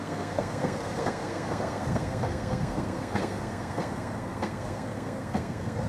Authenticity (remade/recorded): remade